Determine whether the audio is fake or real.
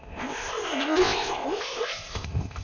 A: fake